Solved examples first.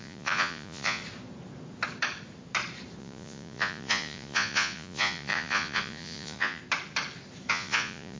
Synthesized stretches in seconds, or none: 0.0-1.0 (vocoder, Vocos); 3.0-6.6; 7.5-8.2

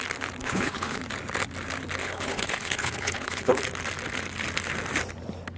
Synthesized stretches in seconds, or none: 0.4-1.0 (codec, HILCodec); 2.0-3.6

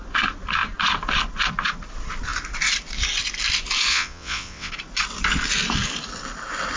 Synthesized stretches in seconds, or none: 3.9-4.7 (vocoder, WaveNeXt)

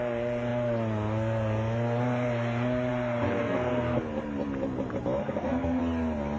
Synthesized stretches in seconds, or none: 3.4-4.0 (codec, SNAC); 5.2-5.8

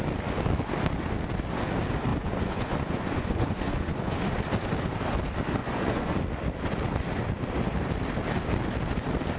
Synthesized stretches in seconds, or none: 2.1-4.3 (vocoder, Vocos); 5.6-6.2

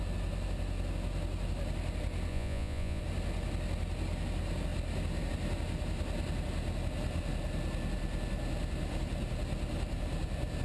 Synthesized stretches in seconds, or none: 2.3-3.0 (vocoder, Vocos)

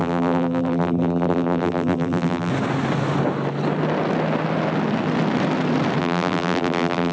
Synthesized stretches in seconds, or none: 0.0-2.5 (vocoder, BigVGAN v2); 6.0-7.1